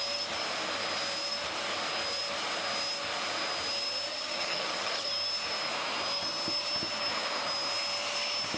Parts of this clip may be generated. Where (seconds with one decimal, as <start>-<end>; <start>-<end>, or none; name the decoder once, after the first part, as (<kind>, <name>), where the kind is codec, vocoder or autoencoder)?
4.1-5.1 (vocoder, HiFi-GAN)